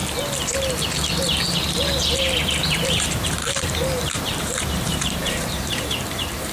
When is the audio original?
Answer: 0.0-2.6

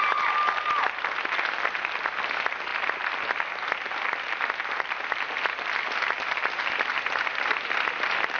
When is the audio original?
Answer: 0.0-8.4

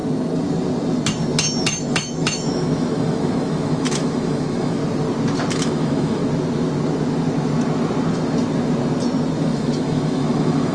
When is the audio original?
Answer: 0.0-1.6; 4.8-5.5; 6.2-9.4